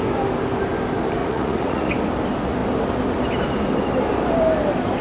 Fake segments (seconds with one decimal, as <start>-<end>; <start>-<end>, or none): 1.2-1.9